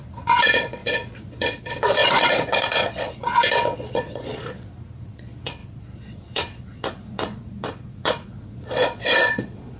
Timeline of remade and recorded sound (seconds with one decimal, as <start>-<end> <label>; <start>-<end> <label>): 0.0-9.8 remade

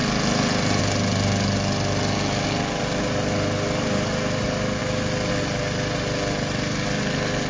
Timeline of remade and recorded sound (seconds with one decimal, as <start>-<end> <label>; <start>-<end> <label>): 0.0-7.5 recorded